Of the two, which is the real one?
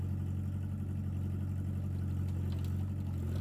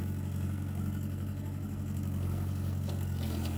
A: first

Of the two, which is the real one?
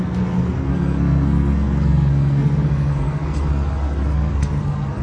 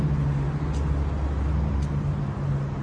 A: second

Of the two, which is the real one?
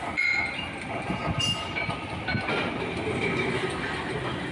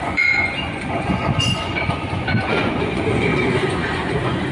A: first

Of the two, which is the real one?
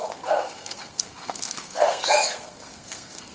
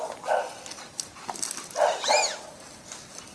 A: second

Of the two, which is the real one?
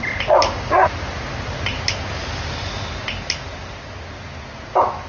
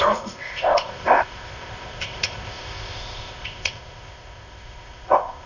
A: first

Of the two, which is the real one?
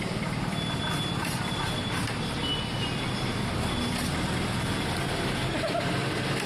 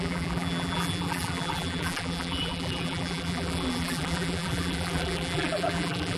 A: first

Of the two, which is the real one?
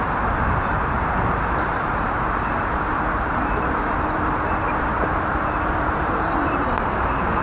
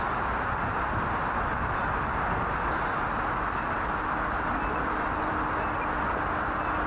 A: second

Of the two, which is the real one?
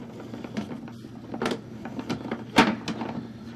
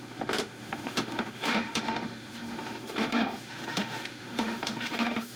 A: first